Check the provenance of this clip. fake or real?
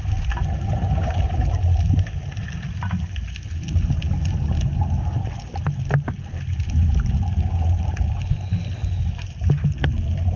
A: real